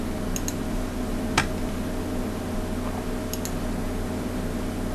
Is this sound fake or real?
real